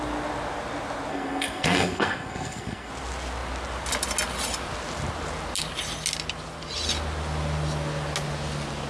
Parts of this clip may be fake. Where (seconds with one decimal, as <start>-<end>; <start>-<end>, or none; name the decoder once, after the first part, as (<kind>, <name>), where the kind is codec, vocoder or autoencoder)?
1.1-2.9 (codec, SNAC)